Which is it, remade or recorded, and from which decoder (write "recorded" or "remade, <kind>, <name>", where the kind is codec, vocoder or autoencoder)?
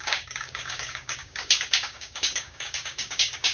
remade, codec, DAC